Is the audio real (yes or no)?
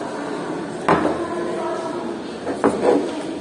yes